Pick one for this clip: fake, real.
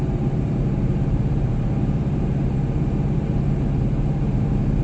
fake